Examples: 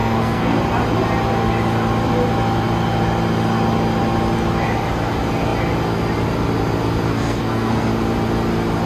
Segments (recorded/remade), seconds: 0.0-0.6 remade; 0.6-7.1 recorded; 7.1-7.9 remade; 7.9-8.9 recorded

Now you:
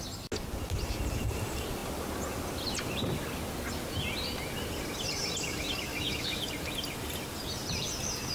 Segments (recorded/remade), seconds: 0.0-5.9 recorded; 5.9-6.5 remade; 6.5-8.3 recorded

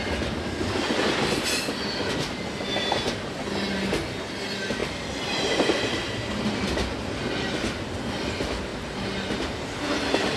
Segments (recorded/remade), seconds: 0.0-4.8 recorded; 4.8-6.4 remade; 6.4-10.4 recorded

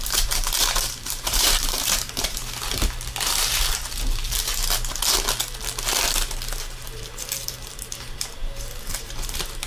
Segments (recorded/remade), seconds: 0.0-2.4 remade; 2.4-6.6 recorded; 6.6-9.7 remade

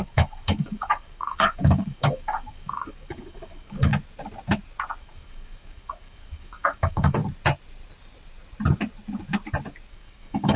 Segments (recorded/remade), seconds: 0.0-3.9 remade; 3.9-5.0 recorded; 5.0-7.2 remade; 7.2-9.9 recorded; 9.9-10.6 remade

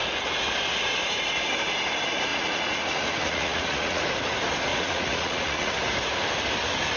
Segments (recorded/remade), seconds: 0.0-2.3 recorded; 2.3-4.0 remade; 4.0-4.7 recorded; 4.7-5.7 remade; 5.7-7.0 recorded

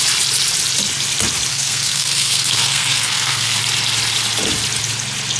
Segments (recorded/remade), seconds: 0.0-1.5 recorded; 1.5-3.6 remade; 3.6-5.4 recorded

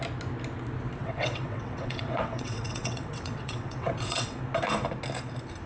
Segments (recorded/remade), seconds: 0.0-1.0 recorded; 1.0-4.4 remade; 4.4-5.7 recorded